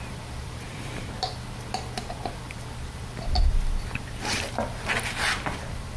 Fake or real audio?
fake